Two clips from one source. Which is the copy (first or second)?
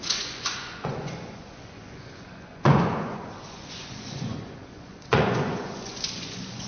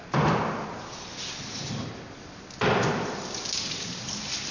first